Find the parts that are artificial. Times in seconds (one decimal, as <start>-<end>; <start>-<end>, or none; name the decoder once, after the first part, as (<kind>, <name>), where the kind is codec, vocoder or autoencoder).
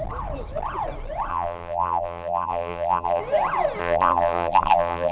1.3-3.2 (vocoder, BigVGAN v2); 3.8-5.1